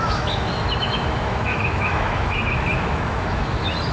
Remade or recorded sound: remade